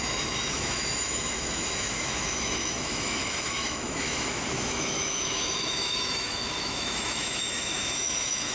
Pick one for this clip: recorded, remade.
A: remade